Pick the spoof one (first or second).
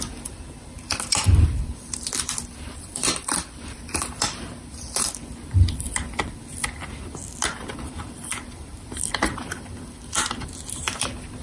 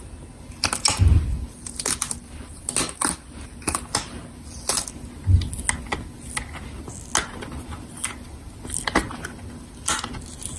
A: first